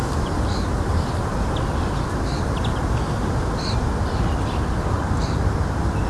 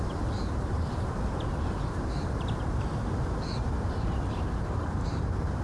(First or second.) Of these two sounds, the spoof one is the second